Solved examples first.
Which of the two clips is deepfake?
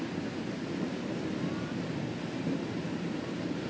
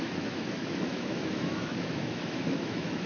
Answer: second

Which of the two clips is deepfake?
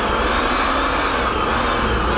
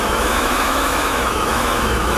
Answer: second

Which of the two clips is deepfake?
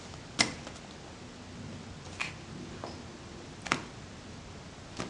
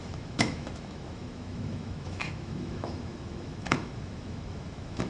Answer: second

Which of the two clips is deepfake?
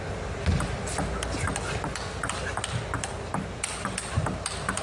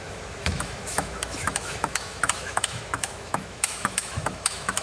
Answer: second